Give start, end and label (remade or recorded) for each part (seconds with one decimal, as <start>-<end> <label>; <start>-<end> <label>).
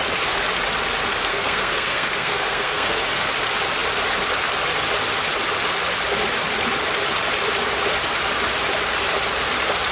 0.0-1.3 recorded; 1.3-3.3 remade; 3.3-9.9 recorded